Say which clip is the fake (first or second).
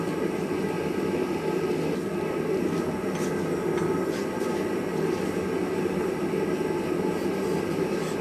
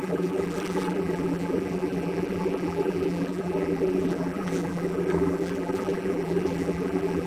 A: second